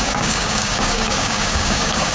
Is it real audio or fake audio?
fake